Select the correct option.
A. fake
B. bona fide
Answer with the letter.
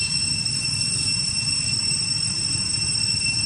B